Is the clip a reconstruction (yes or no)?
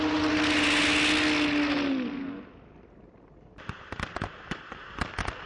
no